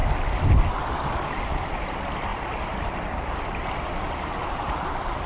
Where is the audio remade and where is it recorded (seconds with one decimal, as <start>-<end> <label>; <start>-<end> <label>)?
0.0-5.3 recorded